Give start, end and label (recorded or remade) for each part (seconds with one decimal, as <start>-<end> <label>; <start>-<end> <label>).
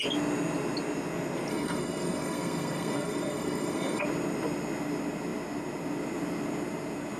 0.0-1.5 recorded; 1.5-4.0 remade; 4.0-7.2 recorded